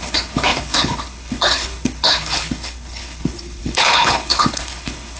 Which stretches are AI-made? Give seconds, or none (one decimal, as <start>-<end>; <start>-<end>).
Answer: 0.0-5.2